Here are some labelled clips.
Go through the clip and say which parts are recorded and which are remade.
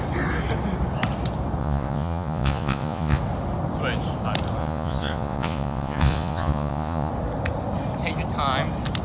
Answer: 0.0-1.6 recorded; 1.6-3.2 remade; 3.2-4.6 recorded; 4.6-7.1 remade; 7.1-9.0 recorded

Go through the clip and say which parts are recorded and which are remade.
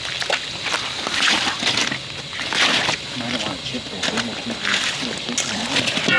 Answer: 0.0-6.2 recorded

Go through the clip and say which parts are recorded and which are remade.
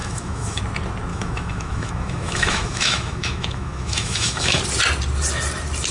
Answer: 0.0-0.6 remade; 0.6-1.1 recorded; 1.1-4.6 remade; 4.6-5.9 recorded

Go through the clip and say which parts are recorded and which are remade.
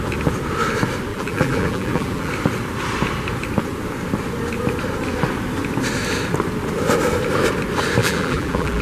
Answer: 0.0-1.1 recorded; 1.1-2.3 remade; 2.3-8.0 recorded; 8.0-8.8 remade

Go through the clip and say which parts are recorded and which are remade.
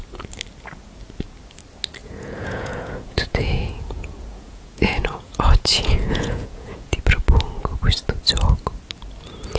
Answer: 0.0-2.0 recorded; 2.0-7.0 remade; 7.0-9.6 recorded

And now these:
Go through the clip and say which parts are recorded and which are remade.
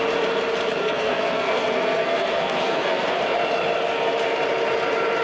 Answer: 0.0-0.8 recorded; 0.8-3.2 remade; 3.2-5.2 recorded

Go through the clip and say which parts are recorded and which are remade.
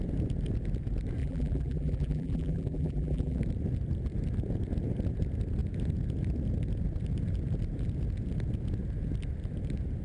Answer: 0.0-1.2 recorded; 1.2-3.4 remade; 3.4-10.0 recorded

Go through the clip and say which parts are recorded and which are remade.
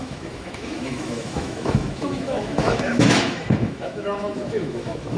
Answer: 0.0-5.2 remade